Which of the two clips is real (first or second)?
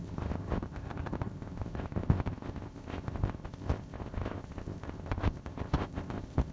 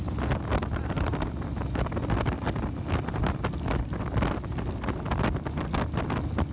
second